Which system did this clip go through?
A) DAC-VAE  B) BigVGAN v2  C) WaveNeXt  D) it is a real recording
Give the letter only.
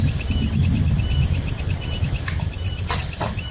D